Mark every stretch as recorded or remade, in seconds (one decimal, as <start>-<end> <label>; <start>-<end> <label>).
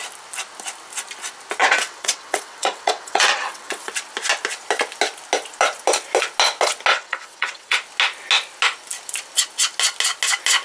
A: 0.0-1.6 recorded; 1.6-3.9 remade; 3.9-6.9 recorded; 6.9-7.8 remade; 7.8-10.6 recorded